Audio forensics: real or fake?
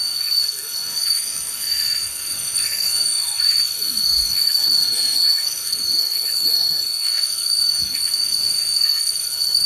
fake